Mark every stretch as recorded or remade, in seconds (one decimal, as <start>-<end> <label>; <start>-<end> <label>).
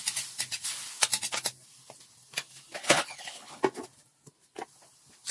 0.0-2.8 recorded; 2.8-3.6 remade; 3.6-5.3 recorded